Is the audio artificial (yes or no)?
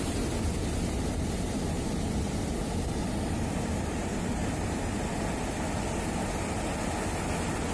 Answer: no